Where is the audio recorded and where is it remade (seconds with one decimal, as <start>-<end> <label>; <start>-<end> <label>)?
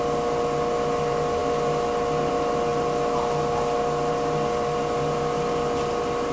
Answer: 0.0-6.3 recorded